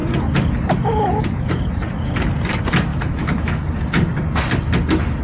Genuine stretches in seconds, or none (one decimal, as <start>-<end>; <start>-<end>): 0.0-2.9; 3.6-5.2